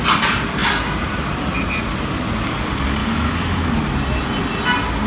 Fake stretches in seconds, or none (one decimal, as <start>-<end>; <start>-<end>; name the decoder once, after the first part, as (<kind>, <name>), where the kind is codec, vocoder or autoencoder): 3.0-3.7 (autoencoder, DAC-VAE)